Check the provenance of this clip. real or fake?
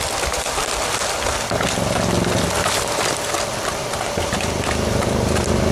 fake